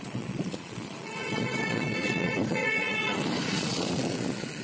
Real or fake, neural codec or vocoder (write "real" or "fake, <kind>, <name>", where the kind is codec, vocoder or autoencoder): fake, vocoder, Vocos